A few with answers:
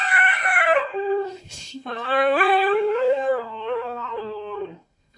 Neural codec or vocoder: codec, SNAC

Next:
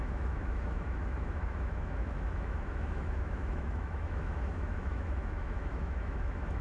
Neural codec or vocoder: autoencoder, DAC-VAE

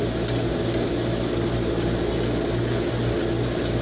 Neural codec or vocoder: none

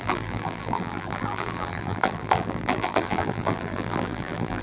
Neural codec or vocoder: vocoder, BigVGAN v2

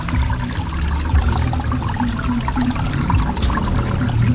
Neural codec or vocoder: none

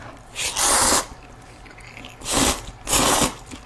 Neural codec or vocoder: none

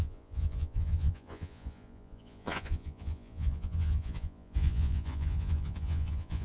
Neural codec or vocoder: vocoder, Vocos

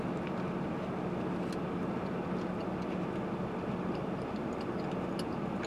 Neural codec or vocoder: none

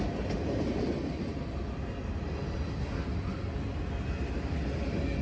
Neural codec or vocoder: none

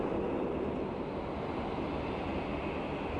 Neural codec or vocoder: none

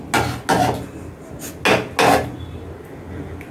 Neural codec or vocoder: none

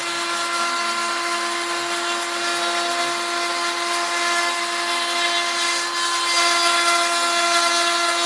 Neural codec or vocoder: none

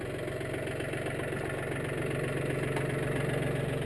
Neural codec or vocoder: none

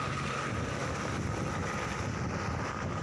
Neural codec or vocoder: none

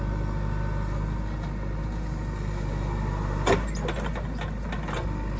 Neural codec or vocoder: none